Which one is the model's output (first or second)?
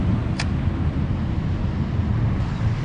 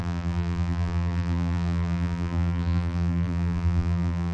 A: second